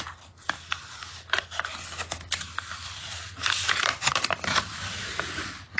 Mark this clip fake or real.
real